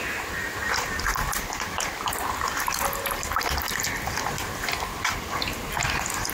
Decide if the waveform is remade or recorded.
recorded